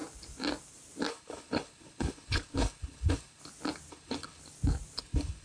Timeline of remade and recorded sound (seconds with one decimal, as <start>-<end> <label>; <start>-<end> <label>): 0.0-1.1 recorded; 1.1-3.4 remade; 3.4-3.9 recorded; 3.9-4.4 remade; 4.4-5.0 recorded; 5.0-5.4 remade